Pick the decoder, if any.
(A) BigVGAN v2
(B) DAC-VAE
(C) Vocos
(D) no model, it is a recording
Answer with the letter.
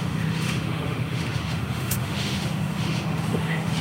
B